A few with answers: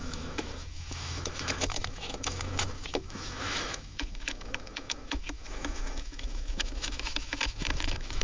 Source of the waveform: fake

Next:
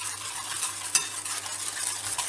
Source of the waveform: real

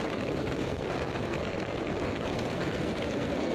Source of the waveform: fake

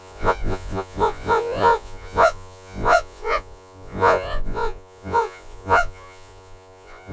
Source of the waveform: fake